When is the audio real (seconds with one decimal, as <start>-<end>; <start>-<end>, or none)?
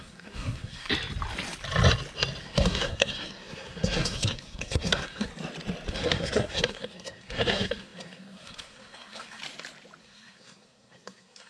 0.9-2.4; 5.3-5.9; 9.4-10.0